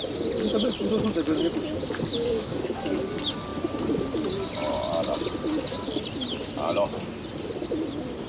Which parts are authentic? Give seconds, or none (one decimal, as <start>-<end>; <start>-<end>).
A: 0.0-2.1; 3.1-8.3